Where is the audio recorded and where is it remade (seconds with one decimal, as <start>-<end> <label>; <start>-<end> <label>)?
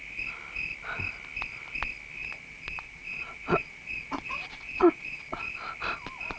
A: 0.0-2.2 recorded; 2.2-5.4 remade; 5.4-6.4 recorded